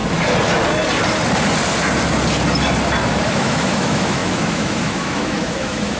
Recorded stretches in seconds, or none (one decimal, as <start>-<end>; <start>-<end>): 0.0-3.3